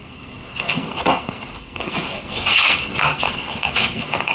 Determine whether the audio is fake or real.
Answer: fake